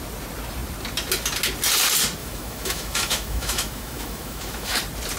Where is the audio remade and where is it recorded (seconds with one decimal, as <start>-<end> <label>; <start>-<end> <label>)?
0.0-2.2 recorded; 2.2-4.8 remade; 4.8-5.2 recorded

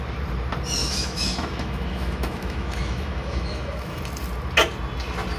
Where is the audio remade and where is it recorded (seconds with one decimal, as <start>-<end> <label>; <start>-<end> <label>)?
0.0-0.8 recorded; 0.8-4.0 remade; 4.0-5.4 recorded

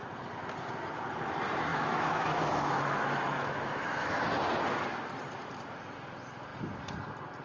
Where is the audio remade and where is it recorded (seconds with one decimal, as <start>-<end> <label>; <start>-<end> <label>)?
0.0-1.7 recorded; 1.7-4.2 remade; 4.2-7.4 recorded

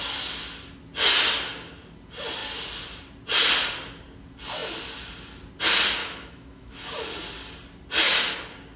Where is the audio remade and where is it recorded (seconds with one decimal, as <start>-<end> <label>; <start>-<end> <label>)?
0.0-6.0 recorded; 6.0-7.0 remade; 7.0-8.8 recorded

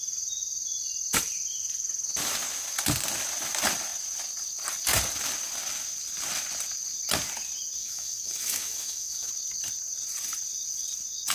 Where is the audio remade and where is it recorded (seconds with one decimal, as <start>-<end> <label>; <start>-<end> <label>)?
0.0-7.8 recorded; 7.8-9.3 remade; 9.3-11.3 recorded

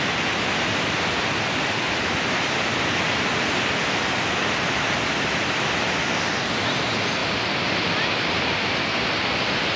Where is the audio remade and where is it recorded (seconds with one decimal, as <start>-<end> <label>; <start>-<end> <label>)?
0.0-9.8 recorded